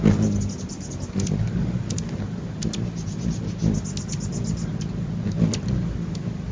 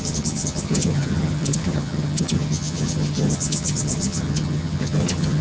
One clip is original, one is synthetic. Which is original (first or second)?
first